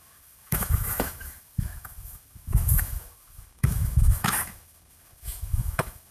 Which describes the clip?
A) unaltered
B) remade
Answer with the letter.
B